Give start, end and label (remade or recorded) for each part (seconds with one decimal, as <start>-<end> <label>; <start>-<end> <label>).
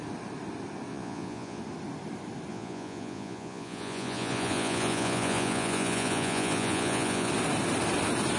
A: 0.0-0.9 recorded; 0.9-1.6 remade; 1.6-2.5 recorded; 2.5-7.3 remade; 7.3-8.4 recorded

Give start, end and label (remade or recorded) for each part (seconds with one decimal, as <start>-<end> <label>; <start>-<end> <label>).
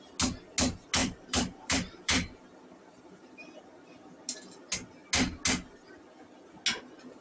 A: 0.0-1.0 recorded; 1.0-3.4 remade; 3.4-7.2 recorded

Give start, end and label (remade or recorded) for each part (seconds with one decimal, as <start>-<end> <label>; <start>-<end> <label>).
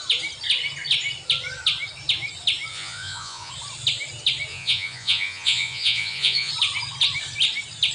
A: 0.0-2.7 recorded; 2.7-3.5 remade; 3.5-4.5 recorded; 4.5-6.5 remade; 6.5-7.9 recorded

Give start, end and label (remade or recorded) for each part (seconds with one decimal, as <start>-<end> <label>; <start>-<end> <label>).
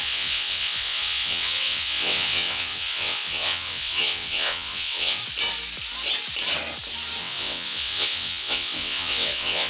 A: 0.0-5.2 remade; 5.2-7.2 recorded; 7.2-9.7 remade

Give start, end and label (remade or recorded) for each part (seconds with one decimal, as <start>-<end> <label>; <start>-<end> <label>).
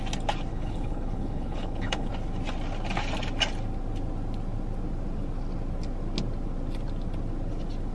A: 0.0-0.5 recorded; 0.5-2.1 remade; 2.1-7.9 recorded